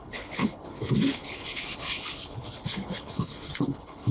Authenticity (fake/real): fake